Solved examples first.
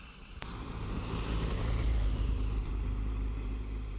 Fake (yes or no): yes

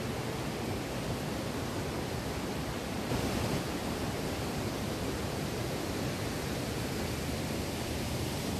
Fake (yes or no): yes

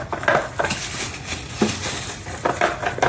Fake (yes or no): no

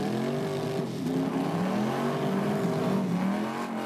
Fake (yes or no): no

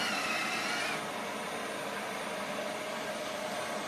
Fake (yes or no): no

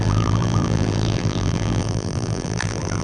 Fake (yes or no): yes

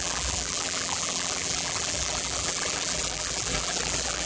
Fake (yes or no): yes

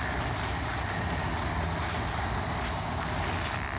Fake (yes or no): yes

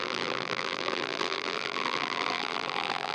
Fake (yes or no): yes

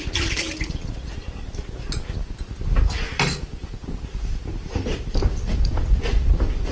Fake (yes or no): yes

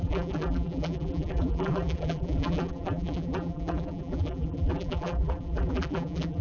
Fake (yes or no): yes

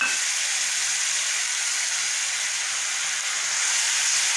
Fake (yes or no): no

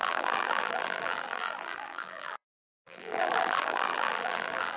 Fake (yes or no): yes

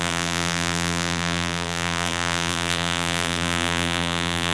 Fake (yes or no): yes